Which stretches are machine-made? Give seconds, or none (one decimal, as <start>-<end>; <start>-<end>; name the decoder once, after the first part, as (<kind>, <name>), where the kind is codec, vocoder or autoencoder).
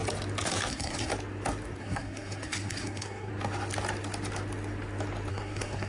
0.7-1.1 (codec, SNAC); 1.8-3.3; 5.3-5.9